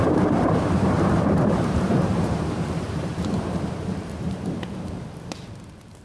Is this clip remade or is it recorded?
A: remade